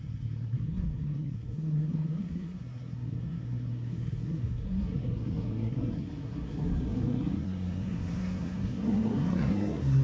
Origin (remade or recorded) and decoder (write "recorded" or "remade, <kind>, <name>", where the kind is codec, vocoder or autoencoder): remade, codec, SNAC